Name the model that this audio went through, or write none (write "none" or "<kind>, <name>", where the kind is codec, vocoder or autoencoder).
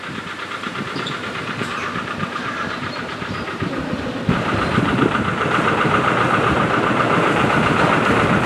vocoder, BigVGAN v2